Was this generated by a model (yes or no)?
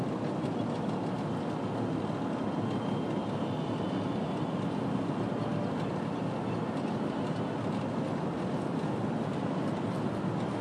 no